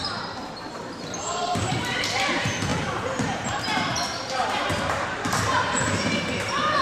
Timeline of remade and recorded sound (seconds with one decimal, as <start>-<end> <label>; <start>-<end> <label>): 0.0-2.7 remade; 2.7-3.2 recorded; 3.2-6.8 remade